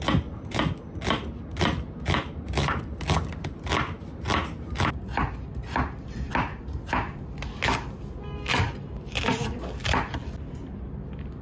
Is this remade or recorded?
recorded